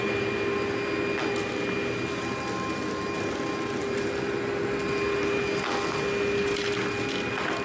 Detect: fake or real real